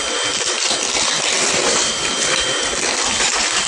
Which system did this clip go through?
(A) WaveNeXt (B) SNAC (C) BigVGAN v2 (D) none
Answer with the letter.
C